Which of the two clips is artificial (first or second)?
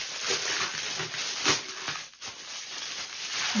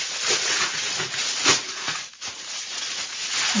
second